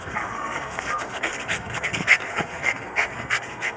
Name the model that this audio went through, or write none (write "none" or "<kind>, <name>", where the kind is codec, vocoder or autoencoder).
codec, SNAC